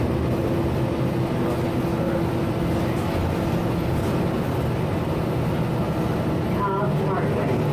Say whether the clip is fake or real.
real